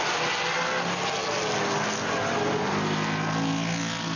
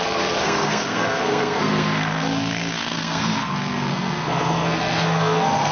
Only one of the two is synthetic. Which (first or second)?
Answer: second